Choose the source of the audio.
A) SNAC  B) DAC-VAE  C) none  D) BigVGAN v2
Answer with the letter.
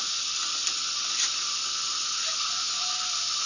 C